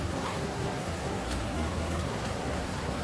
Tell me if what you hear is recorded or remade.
remade